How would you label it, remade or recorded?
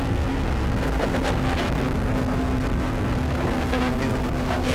remade